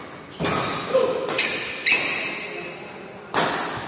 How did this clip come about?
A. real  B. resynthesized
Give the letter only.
A